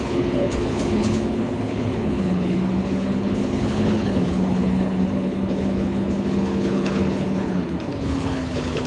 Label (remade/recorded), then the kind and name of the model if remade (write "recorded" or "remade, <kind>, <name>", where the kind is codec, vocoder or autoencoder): remade, codec, HILCodec